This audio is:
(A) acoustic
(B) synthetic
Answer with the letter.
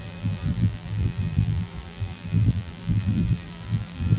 B